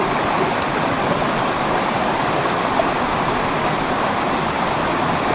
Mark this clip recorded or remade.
recorded